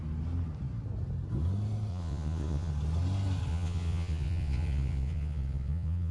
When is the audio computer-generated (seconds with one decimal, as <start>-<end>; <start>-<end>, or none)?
1.9-2.7; 3.5-6.1